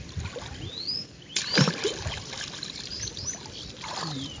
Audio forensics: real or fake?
real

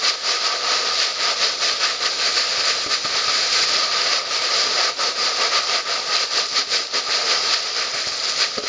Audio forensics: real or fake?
real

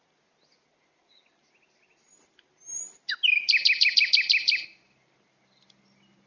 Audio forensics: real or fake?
real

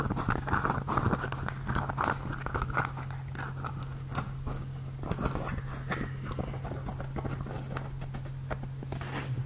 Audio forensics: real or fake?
real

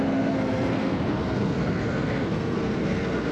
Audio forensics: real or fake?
fake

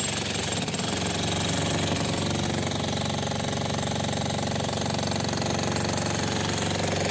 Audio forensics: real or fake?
real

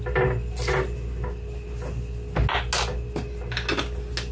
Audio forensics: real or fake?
real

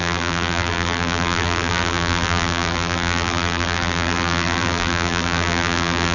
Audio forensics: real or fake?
fake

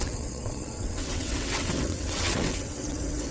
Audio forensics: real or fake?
fake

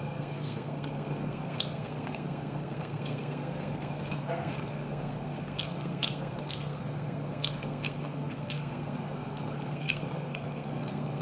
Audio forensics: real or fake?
fake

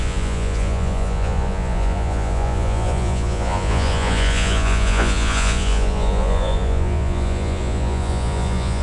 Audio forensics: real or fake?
fake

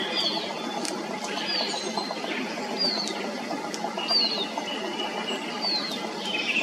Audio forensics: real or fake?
real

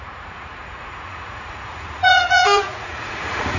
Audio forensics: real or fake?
fake